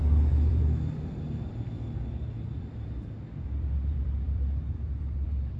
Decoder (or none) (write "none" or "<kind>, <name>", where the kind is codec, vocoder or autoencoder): vocoder, BigVGAN v2